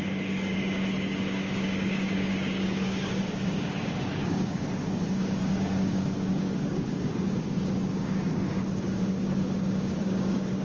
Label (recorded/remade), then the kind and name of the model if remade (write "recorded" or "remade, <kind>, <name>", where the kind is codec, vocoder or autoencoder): remade, codec, DAC